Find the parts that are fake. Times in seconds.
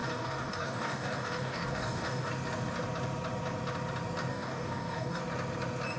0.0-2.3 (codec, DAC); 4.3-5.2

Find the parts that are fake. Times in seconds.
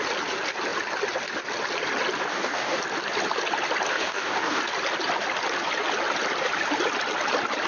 2.3-2.8 (codec, DAC); 3.9-4.6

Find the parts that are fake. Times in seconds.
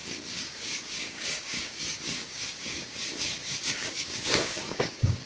0.0-5.3 (codec, DAC)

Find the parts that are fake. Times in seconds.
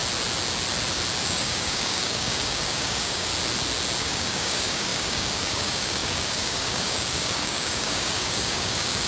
1.2-3.3 (codec, DAC); 4.0-9.1